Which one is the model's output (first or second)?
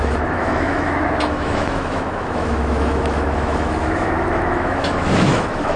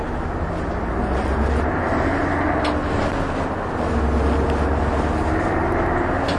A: first